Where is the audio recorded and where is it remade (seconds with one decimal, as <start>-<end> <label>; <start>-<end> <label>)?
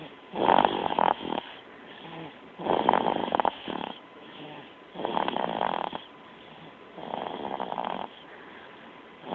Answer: 0.0-0.8 recorded; 0.8-1.4 remade; 1.4-3.2 recorded; 3.2-4.5 remade; 4.5-9.3 recorded